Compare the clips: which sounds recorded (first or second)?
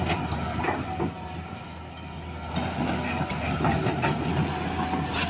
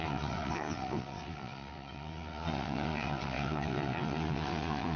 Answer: first